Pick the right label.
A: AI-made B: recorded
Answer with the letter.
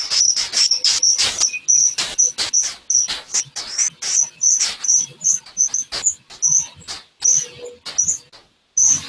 B